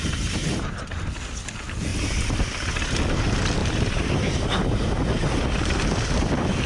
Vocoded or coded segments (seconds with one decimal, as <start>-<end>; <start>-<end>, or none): 0.4-1.1; 1.9-3.0; 3.6-5.0